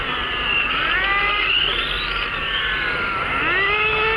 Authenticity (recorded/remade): recorded